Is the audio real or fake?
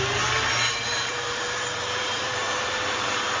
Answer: fake